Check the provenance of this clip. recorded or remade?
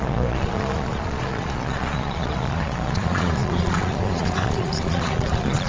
remade